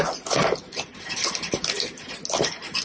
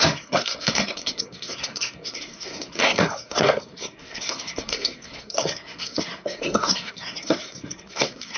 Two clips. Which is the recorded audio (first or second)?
first